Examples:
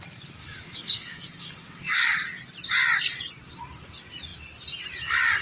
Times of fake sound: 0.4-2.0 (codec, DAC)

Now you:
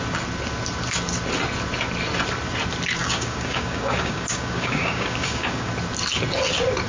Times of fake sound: 3.0-5.7 (codec, DAC)

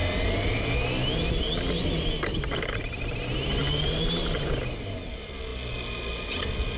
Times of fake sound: none

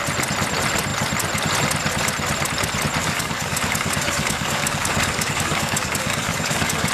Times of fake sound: 3.0-6.9 (codec, DAC)